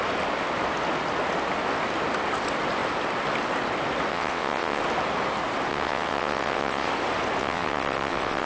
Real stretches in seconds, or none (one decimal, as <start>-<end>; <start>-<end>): 0.0-4.1; 4.8-5.7; 6.9-7.4

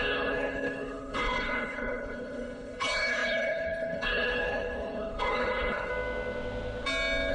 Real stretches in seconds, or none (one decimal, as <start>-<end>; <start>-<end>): 5.9-7.3

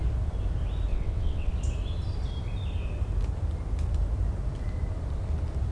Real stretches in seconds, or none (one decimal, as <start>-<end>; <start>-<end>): 0.0-0.9; 1.5-5.7

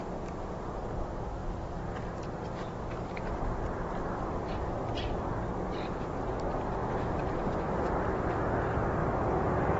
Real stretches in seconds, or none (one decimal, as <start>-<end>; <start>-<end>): 0.0-1.4; 4.9-6.8; 8.5-9.0

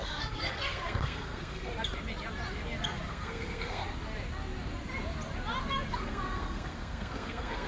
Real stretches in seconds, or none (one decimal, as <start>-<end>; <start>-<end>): 1.7-3.1; 3.8-5.9